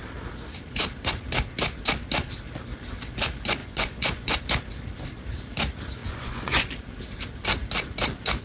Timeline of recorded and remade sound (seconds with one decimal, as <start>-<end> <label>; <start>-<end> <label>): 0.0-3.6 recorded; 3.6-4.4 remade; 4.4-6.0 recorded; 6.0-6.7 remade; 6.7-8.4 recorded